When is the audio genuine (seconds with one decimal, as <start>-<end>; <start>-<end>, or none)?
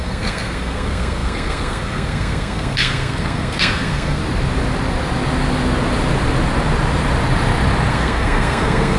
4.2-7.9